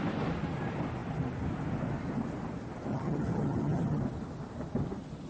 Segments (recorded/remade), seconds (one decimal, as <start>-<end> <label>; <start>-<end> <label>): 0.0-2.9 recorded; 2.9-4.0 remade; 4.0-5.3 recorded